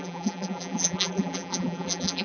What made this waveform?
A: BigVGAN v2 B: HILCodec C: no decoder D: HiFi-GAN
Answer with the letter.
A